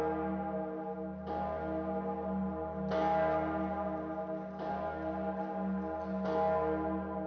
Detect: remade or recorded recorded